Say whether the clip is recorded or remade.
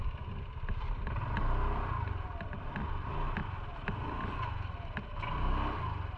recorded